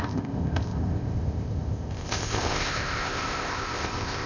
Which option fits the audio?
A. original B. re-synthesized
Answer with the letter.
B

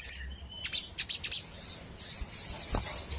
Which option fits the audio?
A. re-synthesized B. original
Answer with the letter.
B